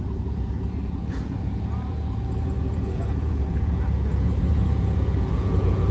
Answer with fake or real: fake